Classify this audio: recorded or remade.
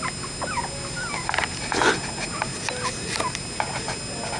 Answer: recorded